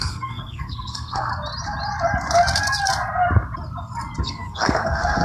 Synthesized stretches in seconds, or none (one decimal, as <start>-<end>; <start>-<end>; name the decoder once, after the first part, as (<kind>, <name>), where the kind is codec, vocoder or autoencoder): 0.0-1.3 (codec, SNAC); 4.2-5.2

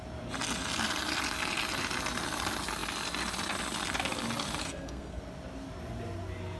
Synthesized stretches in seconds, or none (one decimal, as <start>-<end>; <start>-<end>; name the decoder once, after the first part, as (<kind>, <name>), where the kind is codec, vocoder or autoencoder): 4.6-5.2 (codec, SNAC)

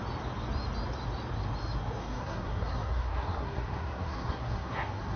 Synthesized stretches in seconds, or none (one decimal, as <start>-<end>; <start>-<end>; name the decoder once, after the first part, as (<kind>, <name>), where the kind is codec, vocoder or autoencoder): 2.0-5.2 (codec, SNAC)